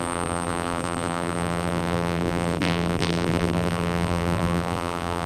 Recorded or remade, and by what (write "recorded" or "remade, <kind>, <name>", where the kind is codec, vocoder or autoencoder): remade, vocoder, BigVGAN v2